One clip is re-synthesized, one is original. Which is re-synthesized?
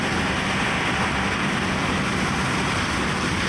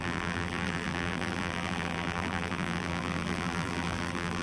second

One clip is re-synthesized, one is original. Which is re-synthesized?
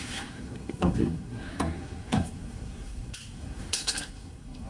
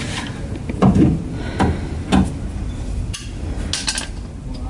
first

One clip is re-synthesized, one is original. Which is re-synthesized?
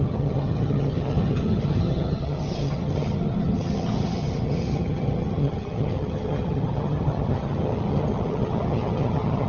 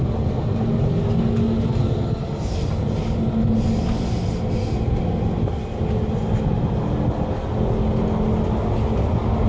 first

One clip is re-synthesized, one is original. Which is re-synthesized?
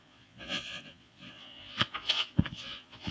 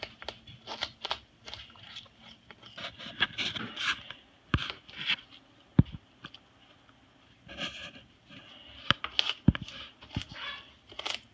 first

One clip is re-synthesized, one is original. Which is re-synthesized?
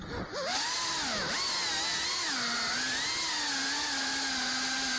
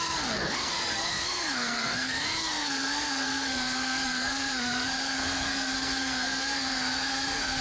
second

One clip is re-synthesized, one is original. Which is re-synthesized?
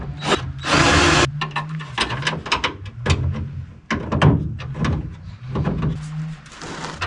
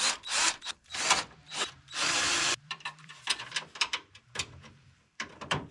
second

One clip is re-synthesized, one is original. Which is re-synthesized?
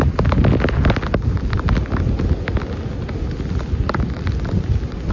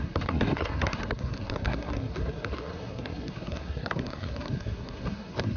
second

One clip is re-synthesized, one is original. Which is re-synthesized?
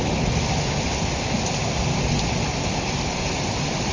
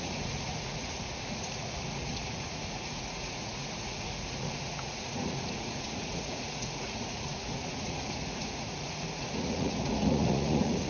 second